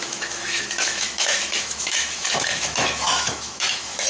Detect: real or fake fake